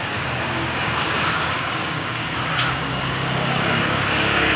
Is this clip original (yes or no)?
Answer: no